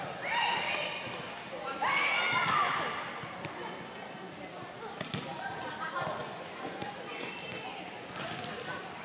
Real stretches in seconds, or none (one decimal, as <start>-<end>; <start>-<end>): 0.0-6.2; 7.3-9.0